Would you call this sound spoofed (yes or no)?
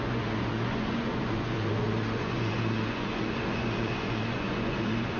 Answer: yes